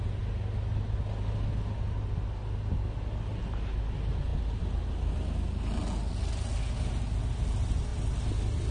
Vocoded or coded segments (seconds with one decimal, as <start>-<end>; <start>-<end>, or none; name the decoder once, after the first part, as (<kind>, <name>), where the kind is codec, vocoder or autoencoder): none